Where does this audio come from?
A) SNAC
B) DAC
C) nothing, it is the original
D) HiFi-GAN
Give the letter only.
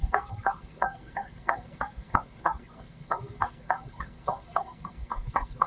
A